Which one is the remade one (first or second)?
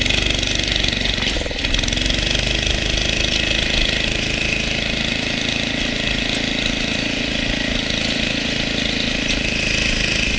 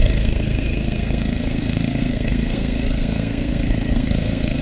second